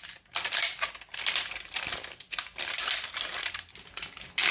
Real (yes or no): yes